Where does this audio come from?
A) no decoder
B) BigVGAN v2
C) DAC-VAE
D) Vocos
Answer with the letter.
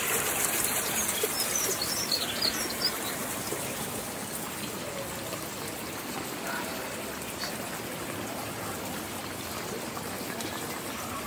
A